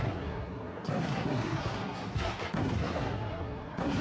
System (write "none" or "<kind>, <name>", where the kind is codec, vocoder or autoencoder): codec, SNAC